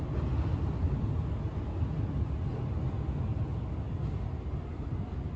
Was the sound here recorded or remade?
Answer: recorded